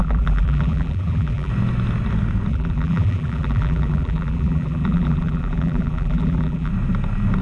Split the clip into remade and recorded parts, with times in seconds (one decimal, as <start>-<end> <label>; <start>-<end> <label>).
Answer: 0.0-1.5 remade; 1.5-2.5 recorded; 2.5-6.7 remade; 6.7-7.4 recorded

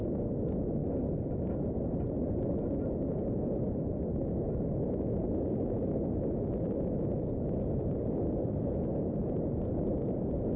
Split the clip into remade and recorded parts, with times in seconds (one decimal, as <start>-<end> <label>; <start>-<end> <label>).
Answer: 0.0-10.6 recorded

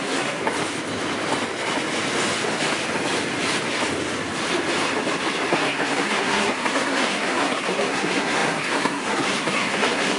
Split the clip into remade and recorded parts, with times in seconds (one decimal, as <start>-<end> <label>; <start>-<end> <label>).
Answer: 0.0-0.4 remade; 0.4-5.5 recorded; 5.5-10.2 remade

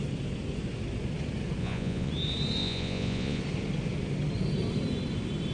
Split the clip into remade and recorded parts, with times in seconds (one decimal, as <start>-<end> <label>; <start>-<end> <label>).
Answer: 0.0-1.6 recorded; 1.6-2.1 remade; 2.1-2.6 recorded; 2.6-3.4 remade; 3.4-5.5 recorded

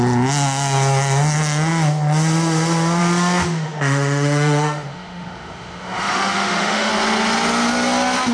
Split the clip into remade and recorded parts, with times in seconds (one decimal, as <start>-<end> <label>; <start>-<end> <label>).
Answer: 0.0-3.4 recorded; 3.4-6.9 remade; 6.9-8.3 recorded

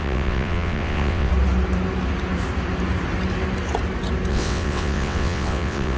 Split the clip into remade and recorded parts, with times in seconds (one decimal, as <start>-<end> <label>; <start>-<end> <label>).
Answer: 0.0-1.3 remade; 1.3-4.3 recorded; 4.3-6.0 remade

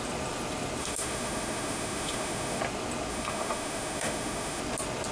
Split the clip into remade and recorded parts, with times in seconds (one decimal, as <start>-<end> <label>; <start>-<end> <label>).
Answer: 0.0-0.8 recorded; 0.8-2.6 remade; 2.6-3.1 recorded; 3.1-4.6 remade; 4.6-5.1 recorded

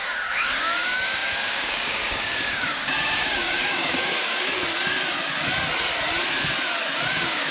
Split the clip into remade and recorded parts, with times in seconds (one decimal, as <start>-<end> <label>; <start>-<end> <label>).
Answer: 0.0-4.6 remade; 4.6-7.1 recorded; 7.1-7.5 remade